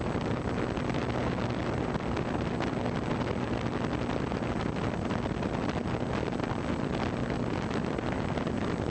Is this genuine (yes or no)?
yes